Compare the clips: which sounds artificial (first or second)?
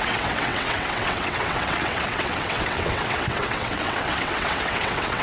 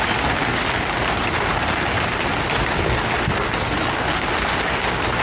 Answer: first